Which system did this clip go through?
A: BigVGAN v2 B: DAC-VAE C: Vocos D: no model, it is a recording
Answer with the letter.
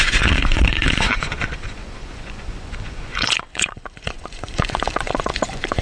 C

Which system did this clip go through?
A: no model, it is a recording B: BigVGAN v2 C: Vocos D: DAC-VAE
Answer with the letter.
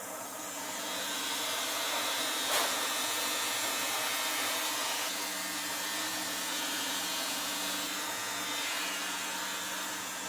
C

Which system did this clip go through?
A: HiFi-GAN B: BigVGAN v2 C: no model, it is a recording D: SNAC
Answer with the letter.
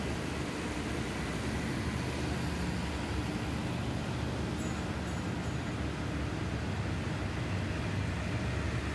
C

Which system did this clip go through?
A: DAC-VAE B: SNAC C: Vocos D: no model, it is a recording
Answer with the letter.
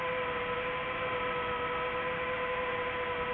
D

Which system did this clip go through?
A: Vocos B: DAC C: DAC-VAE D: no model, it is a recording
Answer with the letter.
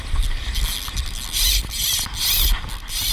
D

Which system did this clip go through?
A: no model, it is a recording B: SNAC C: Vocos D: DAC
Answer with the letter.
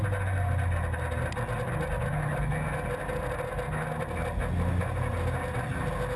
A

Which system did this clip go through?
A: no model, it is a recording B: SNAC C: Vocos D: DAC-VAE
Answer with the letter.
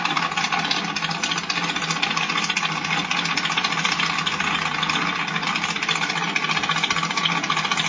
A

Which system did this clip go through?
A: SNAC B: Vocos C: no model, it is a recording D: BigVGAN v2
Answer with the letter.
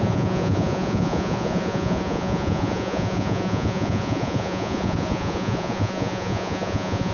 B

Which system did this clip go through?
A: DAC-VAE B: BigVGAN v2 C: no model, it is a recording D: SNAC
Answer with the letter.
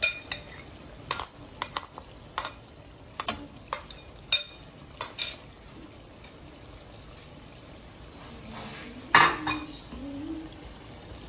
C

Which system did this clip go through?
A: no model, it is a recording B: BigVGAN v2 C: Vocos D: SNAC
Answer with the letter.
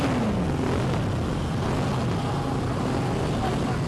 A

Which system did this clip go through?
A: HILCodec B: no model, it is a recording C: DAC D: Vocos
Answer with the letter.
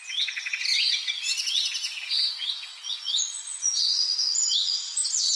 D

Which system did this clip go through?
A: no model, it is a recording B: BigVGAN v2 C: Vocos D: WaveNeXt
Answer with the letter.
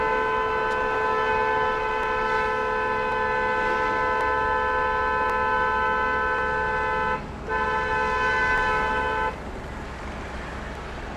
A